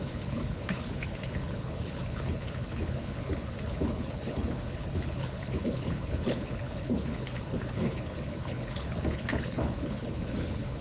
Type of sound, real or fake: fake